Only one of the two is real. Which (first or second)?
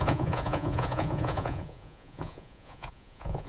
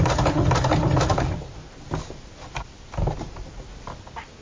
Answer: second